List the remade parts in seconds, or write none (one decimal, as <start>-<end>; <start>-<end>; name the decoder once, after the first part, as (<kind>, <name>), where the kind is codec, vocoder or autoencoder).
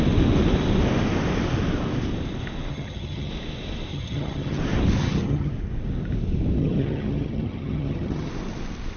2.7-3.3 (vocoder, HiFi-GAN); 3.9-4.6; 5.0-5.5; 6.6-8.3